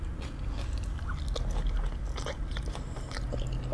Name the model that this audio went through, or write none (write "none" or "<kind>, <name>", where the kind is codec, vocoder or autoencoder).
none